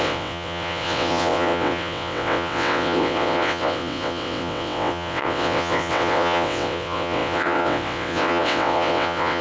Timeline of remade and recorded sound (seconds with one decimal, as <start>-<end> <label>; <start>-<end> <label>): 0.0-9.4 remade